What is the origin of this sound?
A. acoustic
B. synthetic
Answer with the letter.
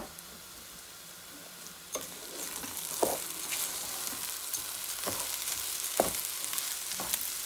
A